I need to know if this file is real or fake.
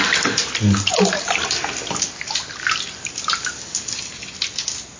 real